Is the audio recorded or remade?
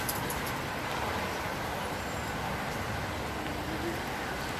recorded